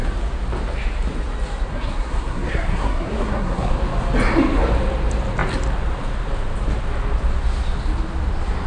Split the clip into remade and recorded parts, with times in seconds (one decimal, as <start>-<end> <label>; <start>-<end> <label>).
0.0-1.7 recorded; 1.7-3.7 remade; 3.7-8.7 recorded